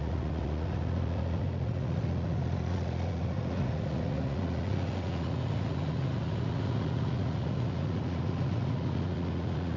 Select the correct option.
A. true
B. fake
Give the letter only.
B